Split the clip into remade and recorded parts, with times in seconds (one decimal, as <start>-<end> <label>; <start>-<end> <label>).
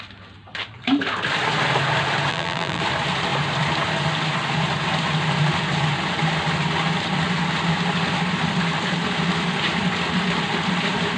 0.0-2.3 recorded; 2.3-2.8 remade; 2.8-11.2 recorded